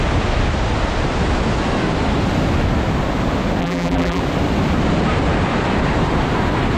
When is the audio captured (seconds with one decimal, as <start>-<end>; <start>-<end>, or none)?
0.0-3.6; 4.2-6.8

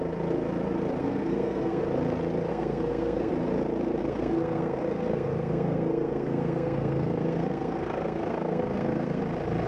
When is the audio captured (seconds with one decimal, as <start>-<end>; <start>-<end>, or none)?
0.0-1.0; 1.8-2.5; 3.3-4.0; 9.2-9.7

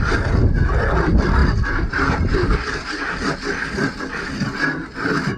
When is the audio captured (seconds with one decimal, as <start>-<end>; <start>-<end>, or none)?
0.0-5.4

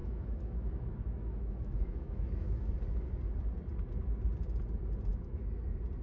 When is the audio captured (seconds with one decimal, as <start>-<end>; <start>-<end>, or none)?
2.7-5.1; 5.6-6.0

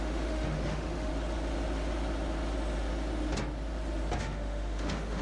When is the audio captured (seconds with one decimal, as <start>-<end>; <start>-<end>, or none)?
1.1-4.2